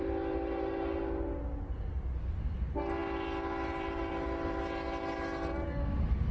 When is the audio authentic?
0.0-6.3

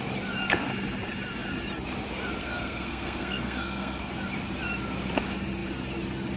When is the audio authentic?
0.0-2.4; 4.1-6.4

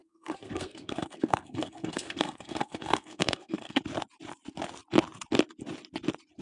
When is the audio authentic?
3.8-6.4

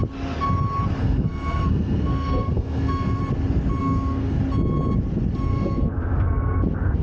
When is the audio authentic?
0.0-1.0; 3.2-3.8; 4.4-5.5; 6.6-7.0

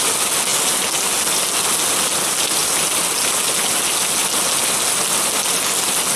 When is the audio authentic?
0.0-6.2

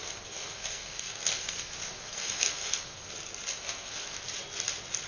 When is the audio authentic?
3.1-3.5; 4.2-5.1